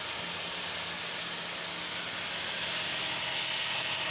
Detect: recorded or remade recorded